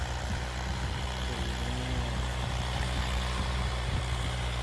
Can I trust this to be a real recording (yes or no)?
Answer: yes